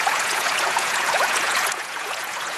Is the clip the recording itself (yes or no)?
no